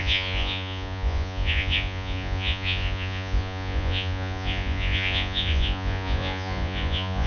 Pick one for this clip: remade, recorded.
remade